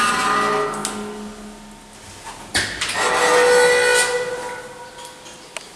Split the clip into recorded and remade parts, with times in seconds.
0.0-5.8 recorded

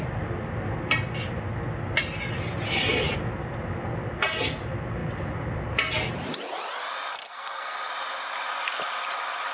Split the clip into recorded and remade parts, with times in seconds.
0.0-7.1 recorded; 7.1-7.9 remade; 7.9-9.5 recorded

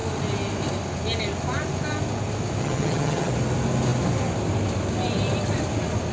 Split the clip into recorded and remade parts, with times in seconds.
0.0-2.6 recorded; 2.6-3.3 remade; 3.3-6.1 recorded

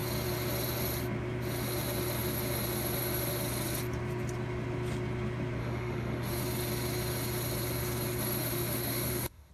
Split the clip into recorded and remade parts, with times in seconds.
0.0-5.6 recorded; 5.6-6.4 remade; 6.4-8.4 recorded; 8.4-9.5 remade

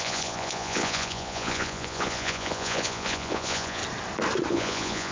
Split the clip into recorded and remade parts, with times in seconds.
0.0-3.8 remade; 3.8-4.5 recorded; 4.5-5.1 remade

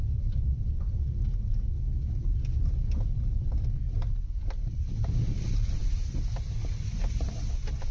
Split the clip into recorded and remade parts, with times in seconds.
0.0-7.9 recorded

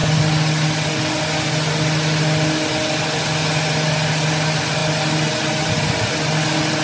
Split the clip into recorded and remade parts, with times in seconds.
0.0-6.8 recorded